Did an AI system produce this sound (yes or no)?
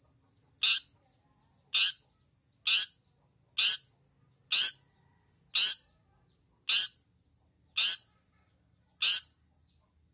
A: no